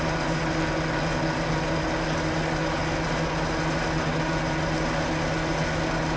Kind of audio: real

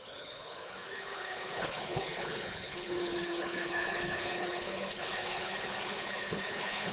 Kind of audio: fake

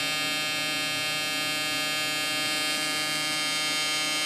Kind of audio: real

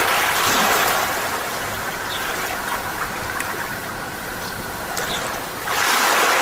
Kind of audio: real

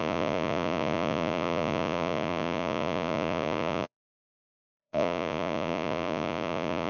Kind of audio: fake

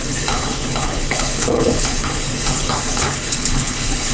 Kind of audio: fake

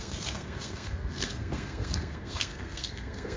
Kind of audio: fake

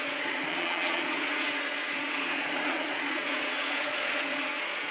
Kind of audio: fake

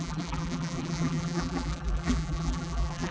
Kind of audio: fake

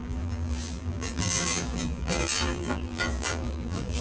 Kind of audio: fake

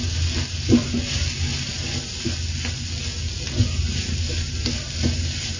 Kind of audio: real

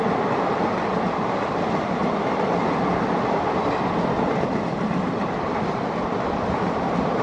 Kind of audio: real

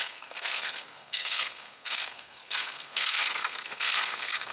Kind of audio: fake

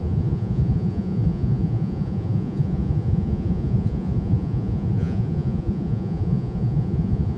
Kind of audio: fake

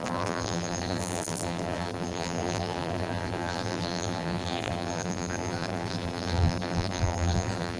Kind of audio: fake